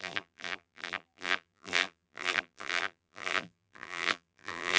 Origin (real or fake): fake